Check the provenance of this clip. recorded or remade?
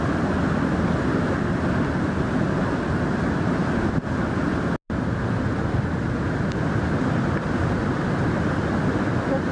recorded